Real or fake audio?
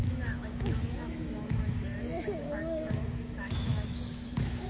fake